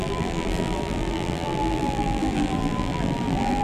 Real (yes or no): no